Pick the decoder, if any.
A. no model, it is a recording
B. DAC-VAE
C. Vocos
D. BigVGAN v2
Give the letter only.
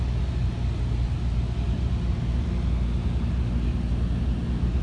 A